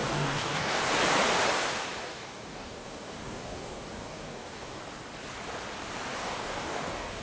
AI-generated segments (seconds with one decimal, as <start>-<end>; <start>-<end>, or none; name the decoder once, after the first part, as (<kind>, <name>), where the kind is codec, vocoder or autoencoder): 0.0-0.8 (codec, DAC); 2.0-4.8; 6.1-7.2